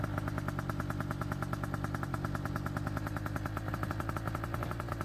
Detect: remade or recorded recorded